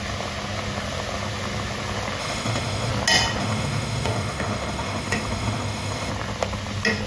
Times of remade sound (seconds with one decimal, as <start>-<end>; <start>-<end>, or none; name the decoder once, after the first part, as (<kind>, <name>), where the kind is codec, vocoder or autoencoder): 2.2-2.9 (autoencoder, DAC-VAE); 3.4-6.1